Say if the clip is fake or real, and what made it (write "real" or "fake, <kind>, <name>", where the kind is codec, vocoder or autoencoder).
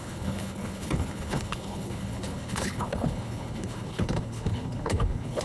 fake, codec, HILCodec